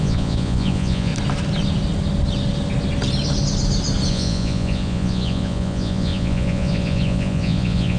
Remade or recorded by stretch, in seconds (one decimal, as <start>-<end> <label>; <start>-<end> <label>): 0.0-1.1 remade; 1.1-4.1 recorded; 4.1-8.0 remade